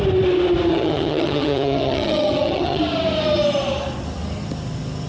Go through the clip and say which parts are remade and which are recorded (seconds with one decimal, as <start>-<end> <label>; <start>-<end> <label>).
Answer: 0.0-0.7 recorded; 0.7-2.8 remade; 2.8-5.1 recorded